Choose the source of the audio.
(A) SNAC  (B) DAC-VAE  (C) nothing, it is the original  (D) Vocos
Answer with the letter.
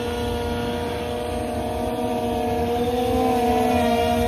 C